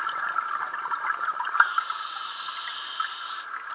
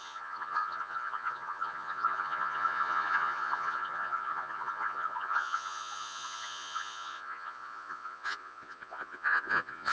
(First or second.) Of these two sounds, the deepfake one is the second